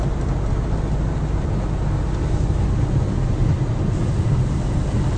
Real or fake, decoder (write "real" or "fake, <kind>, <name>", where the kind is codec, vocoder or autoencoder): real